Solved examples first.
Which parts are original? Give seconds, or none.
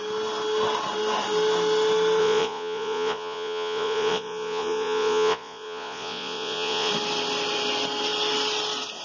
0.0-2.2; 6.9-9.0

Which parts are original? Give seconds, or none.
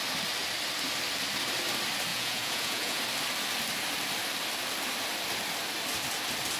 0.0-2.1; 3.0-6.6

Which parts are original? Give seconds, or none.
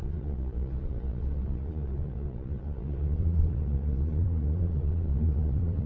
none